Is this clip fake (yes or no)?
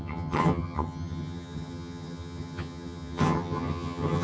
yes